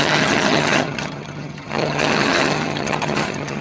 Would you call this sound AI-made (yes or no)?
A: yes